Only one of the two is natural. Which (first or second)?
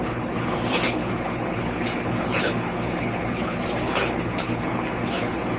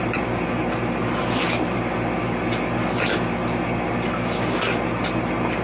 second